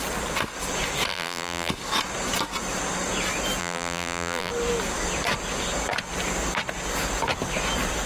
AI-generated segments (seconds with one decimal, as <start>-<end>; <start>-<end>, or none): 1.1-1.7; 3.6-4.5